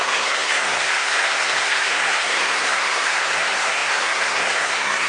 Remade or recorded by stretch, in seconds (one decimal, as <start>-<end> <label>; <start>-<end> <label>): 0.0-5.1 remade